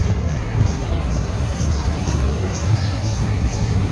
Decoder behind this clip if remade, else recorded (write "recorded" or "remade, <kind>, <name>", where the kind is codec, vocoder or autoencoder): remade, codec, SNAC